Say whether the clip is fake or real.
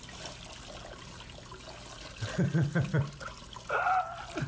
real